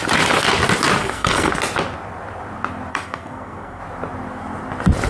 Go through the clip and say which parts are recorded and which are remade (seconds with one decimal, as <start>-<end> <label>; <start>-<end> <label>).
0.0-1.0 recorded; 1.0-1.5 remade; 1.5-2.9 recorded; 2.9-3.8 remade; 3.8-5.1 recorded